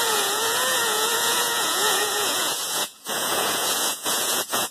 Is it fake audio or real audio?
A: fake